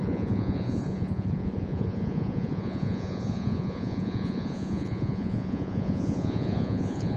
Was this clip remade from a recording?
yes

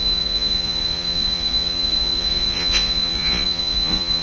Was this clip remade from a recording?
yes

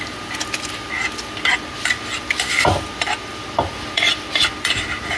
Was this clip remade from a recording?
no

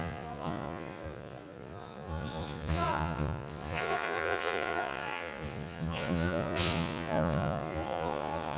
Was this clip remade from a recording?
yes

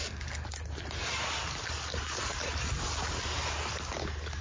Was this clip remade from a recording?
no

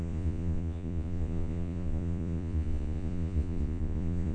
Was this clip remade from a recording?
yes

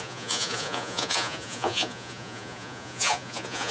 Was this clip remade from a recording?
yes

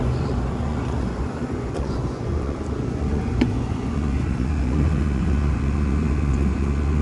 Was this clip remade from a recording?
yes